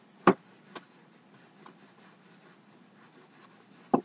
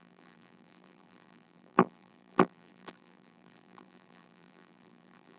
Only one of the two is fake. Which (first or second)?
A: second